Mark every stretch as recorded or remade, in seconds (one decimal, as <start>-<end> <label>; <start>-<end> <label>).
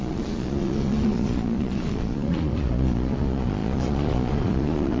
0.0-5.0 remade